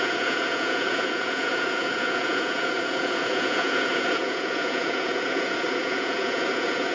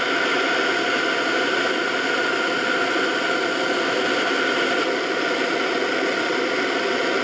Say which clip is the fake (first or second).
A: first